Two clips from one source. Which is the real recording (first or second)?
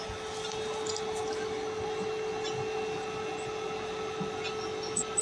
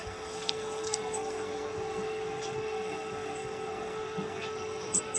first